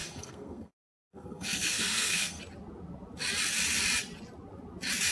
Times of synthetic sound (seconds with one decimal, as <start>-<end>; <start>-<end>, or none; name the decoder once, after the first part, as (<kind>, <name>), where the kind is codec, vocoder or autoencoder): 0.0-2.4 (codec, SNAC)